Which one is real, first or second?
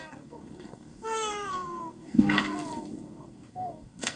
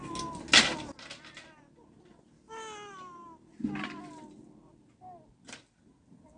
second